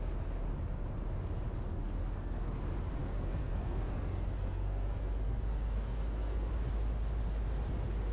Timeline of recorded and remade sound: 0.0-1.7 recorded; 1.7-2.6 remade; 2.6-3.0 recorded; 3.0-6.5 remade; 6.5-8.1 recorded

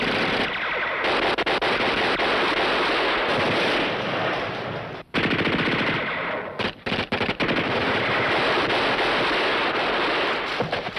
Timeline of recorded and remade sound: 0.0-11.0 recorded